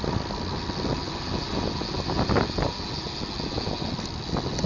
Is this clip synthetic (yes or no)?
no